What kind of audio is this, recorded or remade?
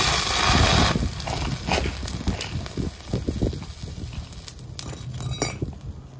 recorded